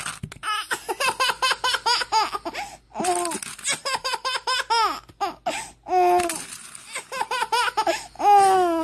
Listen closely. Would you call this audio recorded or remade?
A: recorded